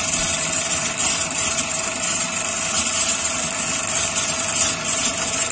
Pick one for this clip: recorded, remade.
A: recorded